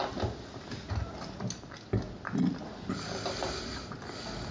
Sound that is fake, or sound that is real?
real